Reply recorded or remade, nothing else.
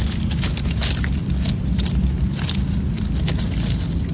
recorded